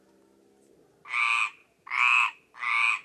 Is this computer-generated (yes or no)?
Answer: no